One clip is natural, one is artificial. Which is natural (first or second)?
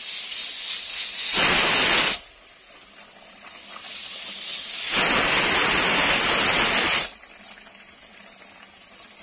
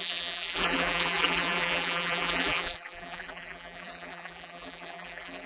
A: first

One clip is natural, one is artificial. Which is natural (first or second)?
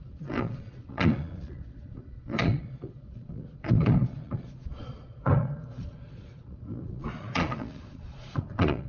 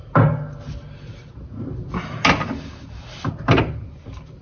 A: second